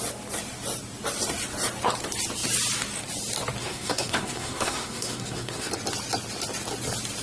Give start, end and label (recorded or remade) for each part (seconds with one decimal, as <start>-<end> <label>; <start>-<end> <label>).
0.0-3.6 recorded; 3.6-5.7 remade; 5.7-7.2 recorded